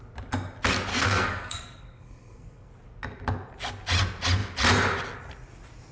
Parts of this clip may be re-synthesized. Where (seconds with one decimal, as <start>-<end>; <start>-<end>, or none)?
0.9-2.7